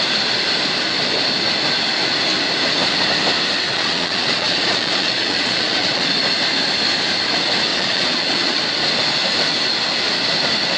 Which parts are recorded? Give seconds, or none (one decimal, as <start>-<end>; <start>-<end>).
0.0-3.7; 6.1-7.7; 8.6-10.8